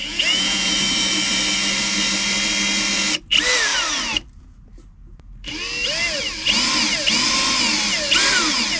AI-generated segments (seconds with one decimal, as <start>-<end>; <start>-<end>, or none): 0.0-0.7